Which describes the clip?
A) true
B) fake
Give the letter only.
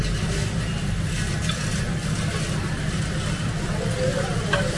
A